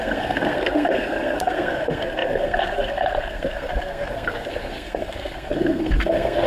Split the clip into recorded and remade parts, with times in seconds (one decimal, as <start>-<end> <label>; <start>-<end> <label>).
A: 0.0-6.5 remade